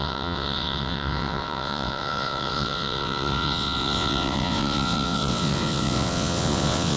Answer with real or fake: fake